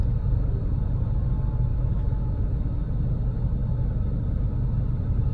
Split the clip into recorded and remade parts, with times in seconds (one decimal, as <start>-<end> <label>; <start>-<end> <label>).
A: 0.0-1.7 recorded; 1.7-2.9 remade; 2.9-5.3 recorded